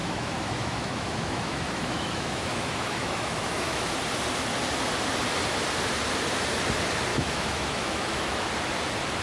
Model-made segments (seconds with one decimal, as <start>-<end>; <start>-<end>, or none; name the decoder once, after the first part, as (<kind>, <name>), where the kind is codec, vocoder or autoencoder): 0.0-3.9 (autoencoder, DAC-VAE); 7.1-8.5